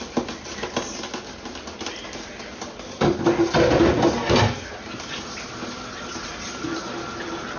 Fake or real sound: real